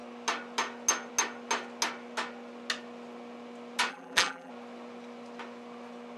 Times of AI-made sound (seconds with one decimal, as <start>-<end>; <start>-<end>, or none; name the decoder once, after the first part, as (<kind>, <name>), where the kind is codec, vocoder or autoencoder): 3.9-4.5 (vocoder, BigVGAN v2)

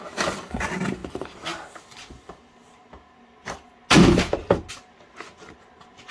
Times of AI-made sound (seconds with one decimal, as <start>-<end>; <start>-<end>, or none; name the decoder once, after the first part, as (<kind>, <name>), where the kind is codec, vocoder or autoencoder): none

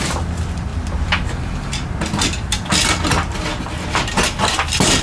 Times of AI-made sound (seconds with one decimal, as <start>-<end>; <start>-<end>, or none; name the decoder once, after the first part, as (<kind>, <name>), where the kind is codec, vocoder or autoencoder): none

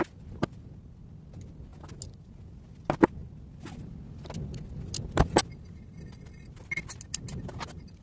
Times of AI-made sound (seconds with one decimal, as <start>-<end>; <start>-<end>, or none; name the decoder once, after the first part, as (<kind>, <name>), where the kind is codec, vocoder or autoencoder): none

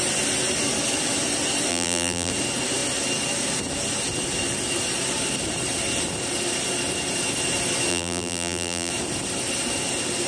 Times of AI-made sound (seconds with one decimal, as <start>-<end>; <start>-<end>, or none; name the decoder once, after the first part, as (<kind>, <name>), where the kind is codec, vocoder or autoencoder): 1.7-2.3 (vocoder, BigVGAN v2); 7.9-8.9

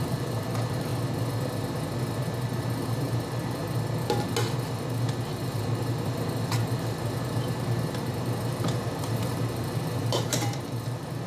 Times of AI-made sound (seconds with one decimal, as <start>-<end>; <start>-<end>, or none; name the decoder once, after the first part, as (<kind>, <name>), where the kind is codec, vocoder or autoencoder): 0.0-0.9 (vocoder, BigVGAN v2); 2.6-3.6; 4.5-11.3

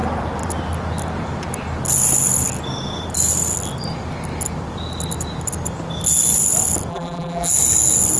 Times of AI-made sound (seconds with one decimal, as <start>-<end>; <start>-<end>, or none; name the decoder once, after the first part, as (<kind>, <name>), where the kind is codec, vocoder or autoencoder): 6.9-7.5 (vocoder, BigVGAN v2)

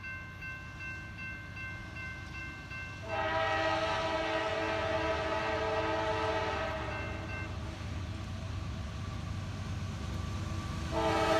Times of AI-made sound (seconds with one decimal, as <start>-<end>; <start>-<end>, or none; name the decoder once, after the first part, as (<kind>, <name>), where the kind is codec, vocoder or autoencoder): 1.8-2.4 (vocoder, BigVGAN v2)